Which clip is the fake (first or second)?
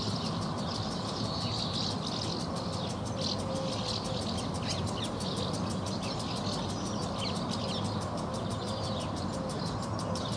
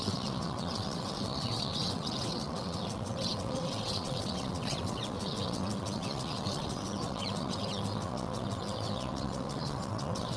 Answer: second